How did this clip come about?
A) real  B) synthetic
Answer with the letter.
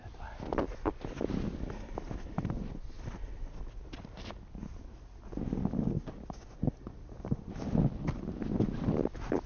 A